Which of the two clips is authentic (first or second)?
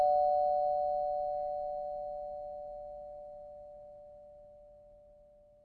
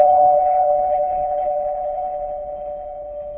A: first